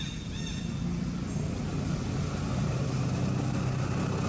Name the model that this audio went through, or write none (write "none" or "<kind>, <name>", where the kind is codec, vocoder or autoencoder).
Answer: none